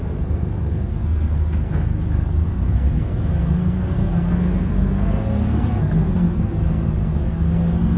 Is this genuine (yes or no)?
no